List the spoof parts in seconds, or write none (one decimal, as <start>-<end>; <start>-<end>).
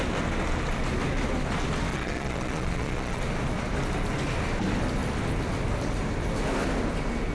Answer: 1.9-3.2